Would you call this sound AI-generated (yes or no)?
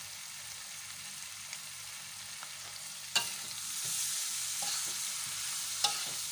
no